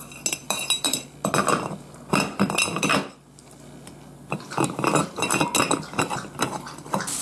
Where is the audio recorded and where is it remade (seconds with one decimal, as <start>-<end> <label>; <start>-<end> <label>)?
0.0-0.4 recorded; 0.4-1.1 remade; 1.1-7.2 recorded